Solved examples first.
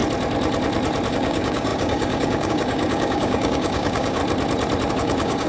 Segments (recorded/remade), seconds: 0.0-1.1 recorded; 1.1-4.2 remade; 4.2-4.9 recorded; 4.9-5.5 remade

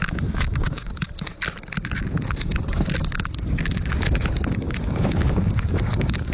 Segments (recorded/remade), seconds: 0.0-0.9 remade; 0.9-4.5 recorded; 4.5-6.3 remade

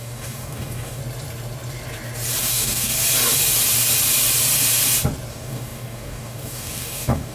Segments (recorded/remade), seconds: 0.0-1.0 remade; 1.0-2.4 recorded; 2.4-2.9 remade; 2.9-5.3 recorded; 5.3-7.3 remade

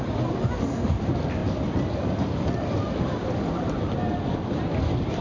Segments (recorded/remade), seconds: 0.0-5.2 recorded

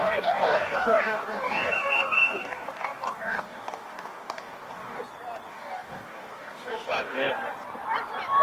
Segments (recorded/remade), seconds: 0.0-5.0 remade; 5.0-5.5 recorded; 5.5-7.3 remade; 7.3-8.4 recorded

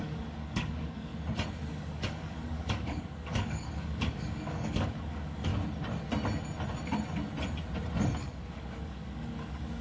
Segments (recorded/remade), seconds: 0.0-1.1 remade; 1.1-1.7 recorded; 1.7-5.5 remade; 5.5-8.2 recorded; 8.2-9.8 remade

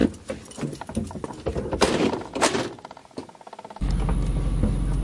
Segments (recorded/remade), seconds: 0.0-3.0 recorded; 3.0-3.9 remade; 3.9-5.0 recorded

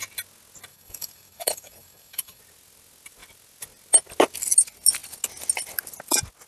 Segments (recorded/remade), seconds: 0.0-0.7 recorded; 0.7-2.4 remade; 2.4-6.5 recorded